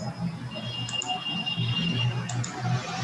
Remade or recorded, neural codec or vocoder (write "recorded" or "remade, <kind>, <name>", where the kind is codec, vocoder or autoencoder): recorded